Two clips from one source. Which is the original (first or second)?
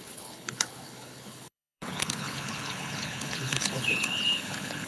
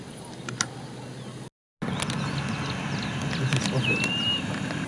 second